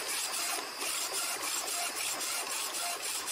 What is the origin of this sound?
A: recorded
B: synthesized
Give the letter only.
A